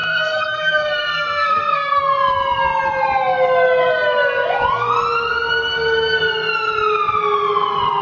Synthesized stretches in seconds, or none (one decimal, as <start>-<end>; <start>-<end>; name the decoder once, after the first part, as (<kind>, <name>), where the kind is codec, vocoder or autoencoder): 0.0-2.0 (codec, SNAC)